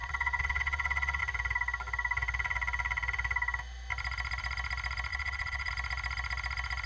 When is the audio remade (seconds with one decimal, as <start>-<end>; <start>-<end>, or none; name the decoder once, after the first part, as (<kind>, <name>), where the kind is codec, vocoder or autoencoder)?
0.0-1.2 (vocoder, WaveNeXt); 5.1-5.7